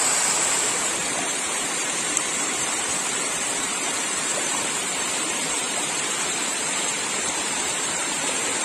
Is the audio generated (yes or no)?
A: yes